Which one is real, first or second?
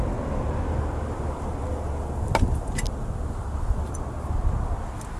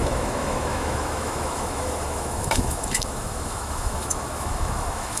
first